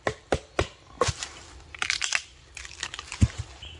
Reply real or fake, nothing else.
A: real